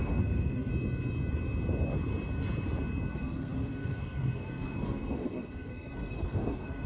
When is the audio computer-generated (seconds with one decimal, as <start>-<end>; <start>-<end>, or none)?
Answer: 0.0-0.7; 3.1-6.9